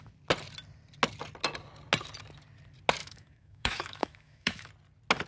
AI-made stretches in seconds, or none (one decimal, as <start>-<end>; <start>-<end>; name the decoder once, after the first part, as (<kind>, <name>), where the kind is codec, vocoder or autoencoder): 3.0-4.7 (autoencoder, DAC-VAE)

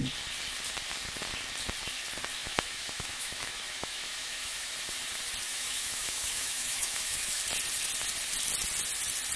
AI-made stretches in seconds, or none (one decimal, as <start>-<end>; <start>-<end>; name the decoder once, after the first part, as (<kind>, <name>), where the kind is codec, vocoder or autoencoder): 2.4-4.7 (autoencoder, DAC-VAE); 5.5-7.4

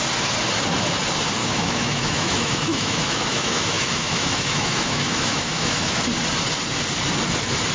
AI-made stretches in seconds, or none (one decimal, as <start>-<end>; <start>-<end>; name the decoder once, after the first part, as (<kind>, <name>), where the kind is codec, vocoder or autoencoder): 1.4-6.0 (autoencoder, DAC-VAE)

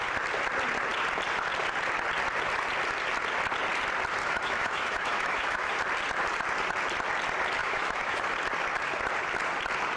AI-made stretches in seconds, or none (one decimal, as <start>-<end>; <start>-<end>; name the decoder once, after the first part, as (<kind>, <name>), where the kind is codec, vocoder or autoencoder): 4.2-5.7 (autoencoder, DAC-VAE); 7.6-8.2

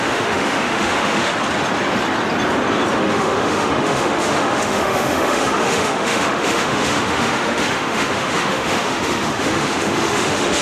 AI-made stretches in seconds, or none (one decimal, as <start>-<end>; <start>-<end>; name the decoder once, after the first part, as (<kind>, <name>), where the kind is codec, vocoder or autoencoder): 0.0-1.3 (autoencoder, DAC-VAE); 3.0-10.6

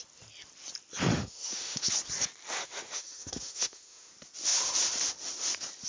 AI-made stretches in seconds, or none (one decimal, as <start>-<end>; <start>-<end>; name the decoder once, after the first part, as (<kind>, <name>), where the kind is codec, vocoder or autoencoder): 1.1-1.9 (autoencoder, DAC-VAE); 2.6-4.1

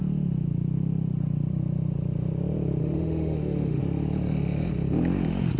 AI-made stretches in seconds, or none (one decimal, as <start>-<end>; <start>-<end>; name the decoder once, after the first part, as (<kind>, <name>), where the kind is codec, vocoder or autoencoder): 2.8-3.8 (autoencoder, DAC-VAE)

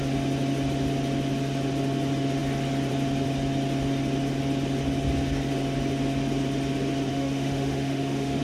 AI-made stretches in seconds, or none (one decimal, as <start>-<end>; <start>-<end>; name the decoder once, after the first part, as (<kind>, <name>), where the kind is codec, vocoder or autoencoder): 7.1-8.4 (autoencoder, DAC-VAE)